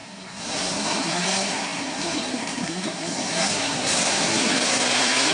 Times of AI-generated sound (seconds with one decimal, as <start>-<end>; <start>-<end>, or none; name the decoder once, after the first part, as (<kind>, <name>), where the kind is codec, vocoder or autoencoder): 0.0-5.3 (codec, SNAC)